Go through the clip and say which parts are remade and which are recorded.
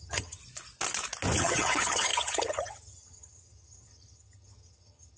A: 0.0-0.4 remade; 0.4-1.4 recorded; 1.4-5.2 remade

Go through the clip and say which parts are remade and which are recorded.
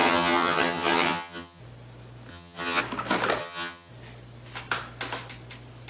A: 0.0-1.6 remade; 1.6-2.3 recorded; 2.3-2.8 remade; 2.8-3.4 recorded; 3.4-3.9 remade; 3.9-5.9 recorded